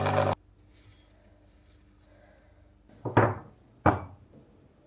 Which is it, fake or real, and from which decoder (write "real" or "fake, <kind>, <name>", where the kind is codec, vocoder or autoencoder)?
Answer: real